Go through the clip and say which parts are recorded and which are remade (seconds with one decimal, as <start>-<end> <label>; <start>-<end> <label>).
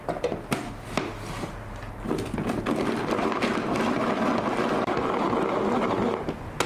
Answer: 0.0-6.7 recorded